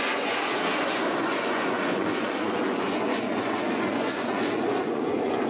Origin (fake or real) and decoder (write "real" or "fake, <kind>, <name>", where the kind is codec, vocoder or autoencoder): fake, vocoder, Vocos